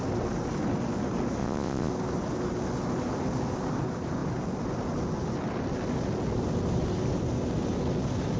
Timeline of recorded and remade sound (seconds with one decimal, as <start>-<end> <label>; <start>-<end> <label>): 0.0-1.4 recorded; 1.4-1.9 remade; 1.9-8.4 recorded